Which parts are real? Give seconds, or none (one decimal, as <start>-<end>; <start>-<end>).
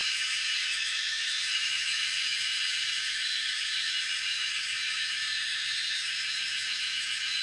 none